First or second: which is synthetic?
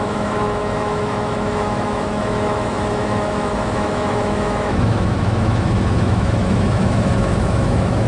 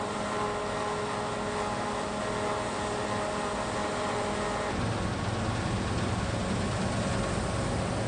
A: first